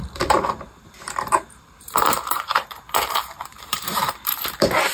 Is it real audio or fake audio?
fake